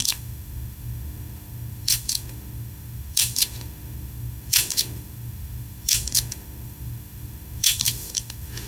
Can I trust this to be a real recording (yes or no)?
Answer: no